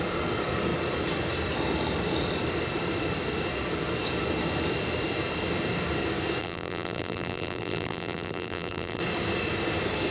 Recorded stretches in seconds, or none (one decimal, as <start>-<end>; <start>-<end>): 0.0-6.4; 9.0-10.1